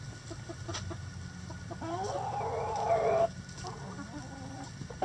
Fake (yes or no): no